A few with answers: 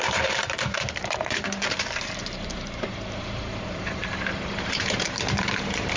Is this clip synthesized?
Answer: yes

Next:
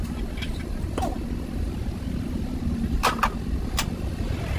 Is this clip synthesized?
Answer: yes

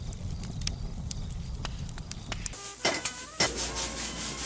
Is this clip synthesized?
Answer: no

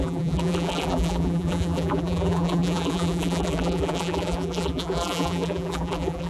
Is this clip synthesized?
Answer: yes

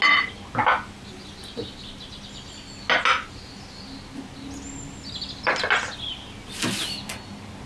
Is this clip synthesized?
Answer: no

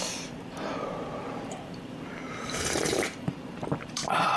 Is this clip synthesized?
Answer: yes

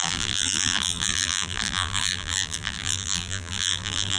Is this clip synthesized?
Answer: yes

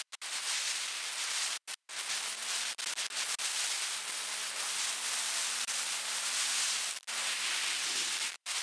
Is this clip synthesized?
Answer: no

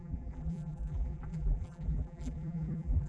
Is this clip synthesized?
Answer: yes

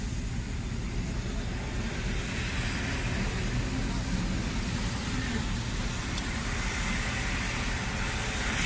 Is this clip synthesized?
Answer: no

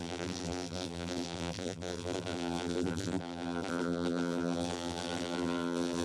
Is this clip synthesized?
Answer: yes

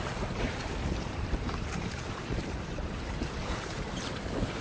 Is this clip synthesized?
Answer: yes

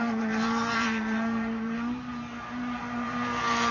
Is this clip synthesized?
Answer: yes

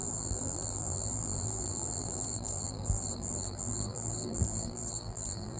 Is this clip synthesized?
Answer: yes